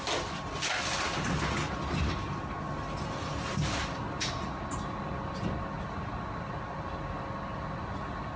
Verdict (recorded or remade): recorded